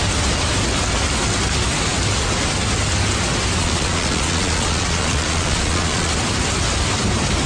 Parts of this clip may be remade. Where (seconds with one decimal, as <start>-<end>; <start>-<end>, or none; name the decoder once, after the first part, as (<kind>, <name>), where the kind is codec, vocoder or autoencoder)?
3.6-6.1 (vocoder, Vocos)